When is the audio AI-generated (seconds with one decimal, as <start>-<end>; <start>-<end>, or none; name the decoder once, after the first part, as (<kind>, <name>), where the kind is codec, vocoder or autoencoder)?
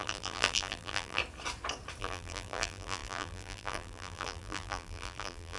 0.0-1.2 (vocoder, BigVGAN v2); 2.0-5.6